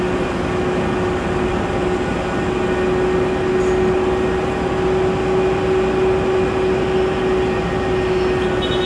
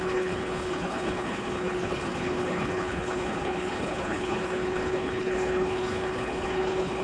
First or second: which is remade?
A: second